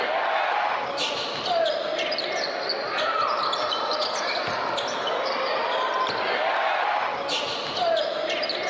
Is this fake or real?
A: real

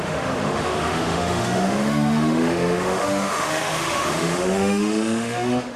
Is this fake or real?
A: fake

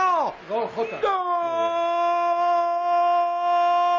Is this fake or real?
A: real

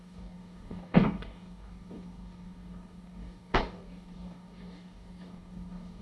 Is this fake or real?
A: fake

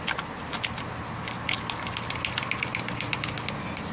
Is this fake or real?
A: real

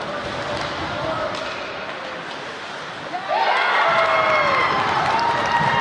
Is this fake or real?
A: real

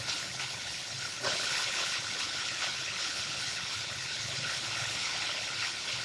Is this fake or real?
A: fake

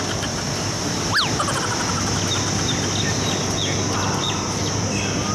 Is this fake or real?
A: real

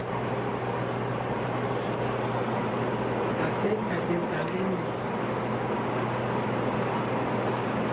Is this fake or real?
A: real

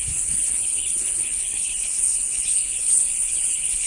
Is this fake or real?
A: fake